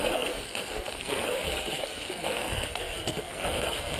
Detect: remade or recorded remade